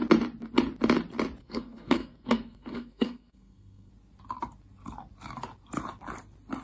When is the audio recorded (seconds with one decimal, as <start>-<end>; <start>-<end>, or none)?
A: 0.0-1.4; 3.9-6.6